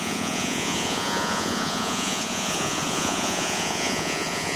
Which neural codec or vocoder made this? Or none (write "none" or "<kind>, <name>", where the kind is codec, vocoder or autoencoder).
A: vocoder, Vocos